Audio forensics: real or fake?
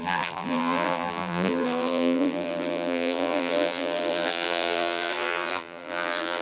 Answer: fake